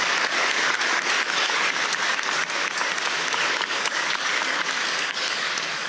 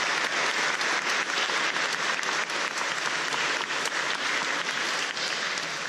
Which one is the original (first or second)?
second